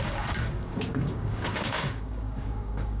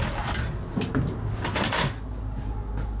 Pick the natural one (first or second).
second